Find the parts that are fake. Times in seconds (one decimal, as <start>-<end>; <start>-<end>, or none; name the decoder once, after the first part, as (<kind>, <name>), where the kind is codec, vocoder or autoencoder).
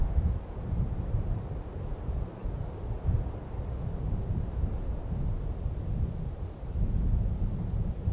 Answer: 0.0-2.4 (vocoder, BigVGAN v2); 7.2-8.1